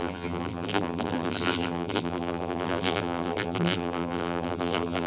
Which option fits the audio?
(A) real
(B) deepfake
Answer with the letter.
B